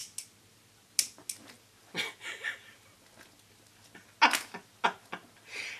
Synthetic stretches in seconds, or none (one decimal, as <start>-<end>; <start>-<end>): none